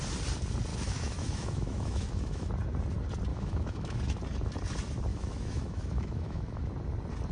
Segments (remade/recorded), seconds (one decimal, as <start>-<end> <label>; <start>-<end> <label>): 0.0-0.7 recorded; 0.7-2.5 remade; 2.5-3.3 recorded; 3.3-4.0 remade; 4.0-5.1 recorded; 5.1-6.6 remade; 6.6-7.3 recorded